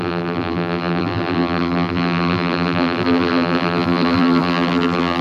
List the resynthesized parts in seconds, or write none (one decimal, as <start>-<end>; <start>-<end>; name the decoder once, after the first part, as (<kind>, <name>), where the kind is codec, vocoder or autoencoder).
0.0-5.2 (vocoder, BigVGAN v2)